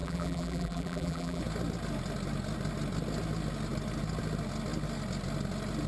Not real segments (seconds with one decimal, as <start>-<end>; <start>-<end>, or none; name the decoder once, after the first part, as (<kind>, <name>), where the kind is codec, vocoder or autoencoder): 0.0-1.4 (vocoder, BigVGAN v2)